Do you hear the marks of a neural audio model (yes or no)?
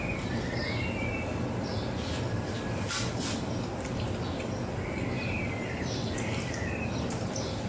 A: no